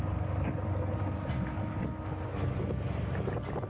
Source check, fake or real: real